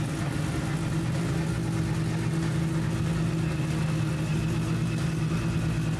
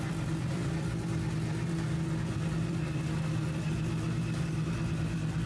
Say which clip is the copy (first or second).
second